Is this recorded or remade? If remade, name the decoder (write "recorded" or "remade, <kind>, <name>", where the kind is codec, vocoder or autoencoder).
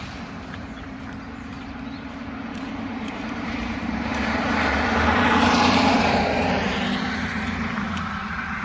remade, vocoder, BigVGAN v2